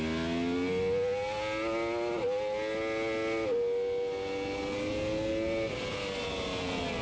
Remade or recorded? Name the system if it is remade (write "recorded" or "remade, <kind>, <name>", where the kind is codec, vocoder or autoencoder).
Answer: recorded